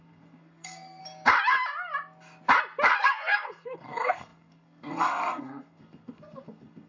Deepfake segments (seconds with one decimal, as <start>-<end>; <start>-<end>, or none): 0.0-1.0; 3.0-6.9